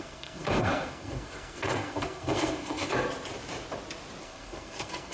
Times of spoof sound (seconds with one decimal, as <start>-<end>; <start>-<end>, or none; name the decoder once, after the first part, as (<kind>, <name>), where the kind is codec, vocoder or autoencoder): 0.0-2.9 (codec, SNAC); 4.2-5.1